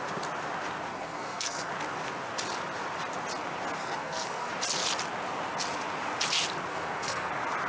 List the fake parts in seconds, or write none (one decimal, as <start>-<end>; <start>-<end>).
0.9-1.7; 3.8-4.5; 6.7-7.3